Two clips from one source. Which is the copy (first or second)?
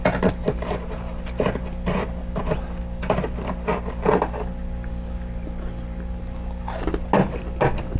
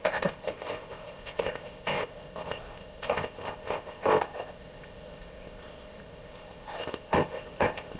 second